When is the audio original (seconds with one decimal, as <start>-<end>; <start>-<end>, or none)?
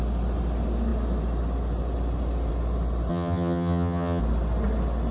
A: 0.0-3.1; 4.2-5.1